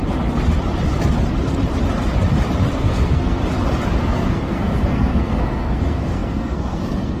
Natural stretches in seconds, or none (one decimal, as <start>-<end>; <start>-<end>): 0.0-2.7; 3.4-4.0